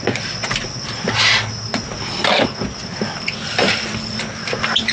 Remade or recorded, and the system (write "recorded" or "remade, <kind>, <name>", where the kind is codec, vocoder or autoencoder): recorded